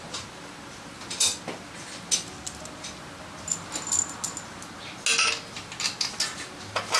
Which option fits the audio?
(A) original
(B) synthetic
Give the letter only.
A